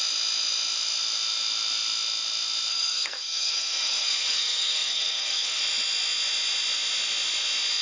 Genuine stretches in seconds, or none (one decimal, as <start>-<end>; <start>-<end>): 0.0-2.7; 5.6-7.8